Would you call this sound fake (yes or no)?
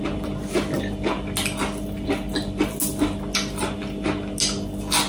no